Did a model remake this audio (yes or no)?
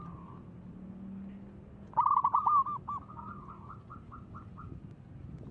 no